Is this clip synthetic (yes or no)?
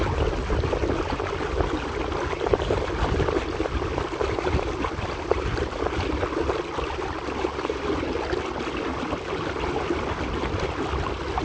no